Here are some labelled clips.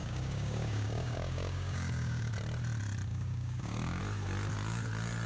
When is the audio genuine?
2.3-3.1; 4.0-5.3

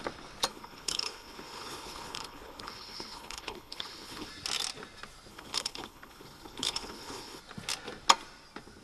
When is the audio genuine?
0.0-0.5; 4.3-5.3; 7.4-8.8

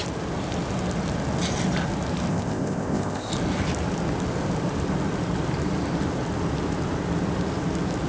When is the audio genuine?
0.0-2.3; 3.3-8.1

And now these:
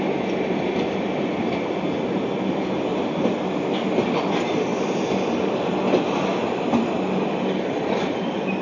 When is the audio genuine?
0.0-8.6

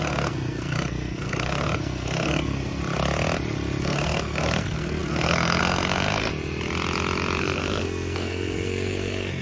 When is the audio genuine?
2.8-3.8; 6.3-7.4

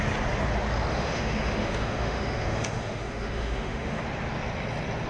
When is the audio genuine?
0.0-0.9; 4.0-5.1

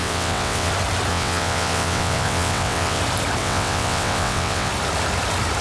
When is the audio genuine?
0.7-1.1; 3.0-3.4; 4.7-5.6